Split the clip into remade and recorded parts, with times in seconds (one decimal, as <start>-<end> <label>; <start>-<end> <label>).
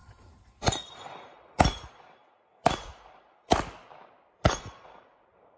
0.0-3.5 remade; 3.5-4.3 recorded; 4.3-5.6 remade